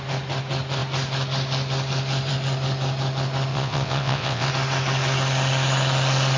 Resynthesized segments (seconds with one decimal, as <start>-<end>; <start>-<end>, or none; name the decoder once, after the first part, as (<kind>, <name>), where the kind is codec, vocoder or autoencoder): 3.5-4.5 (vocoder, WaveNeXt)